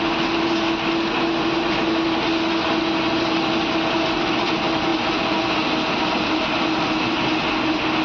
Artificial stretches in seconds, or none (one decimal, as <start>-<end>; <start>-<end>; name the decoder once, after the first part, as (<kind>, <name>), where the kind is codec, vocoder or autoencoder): none